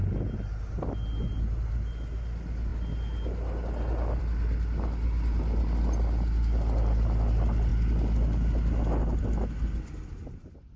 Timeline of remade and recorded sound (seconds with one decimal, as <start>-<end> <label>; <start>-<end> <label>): 0.0-10.8 recorded